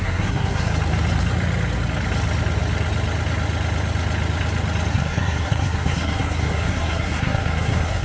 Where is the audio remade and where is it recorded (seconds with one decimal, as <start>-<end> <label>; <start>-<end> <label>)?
0.0-0.7 remade; 0.7-4.9 recorded; 4.9-8.0 remade